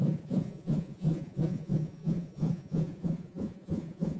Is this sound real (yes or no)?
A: no